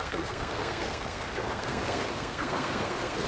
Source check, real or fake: fake